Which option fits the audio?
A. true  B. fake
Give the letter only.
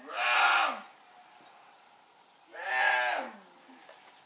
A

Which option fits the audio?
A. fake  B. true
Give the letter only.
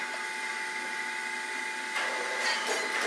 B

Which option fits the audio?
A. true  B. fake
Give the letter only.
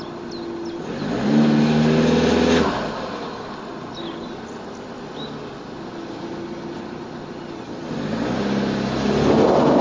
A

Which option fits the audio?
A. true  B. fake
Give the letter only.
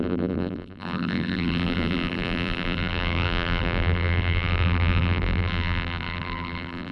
B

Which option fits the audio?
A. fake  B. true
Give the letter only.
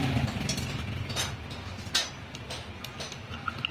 B